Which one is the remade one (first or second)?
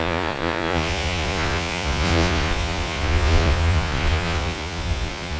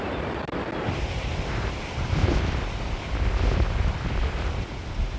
first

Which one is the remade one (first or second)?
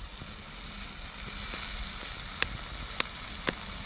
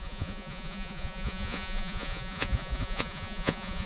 second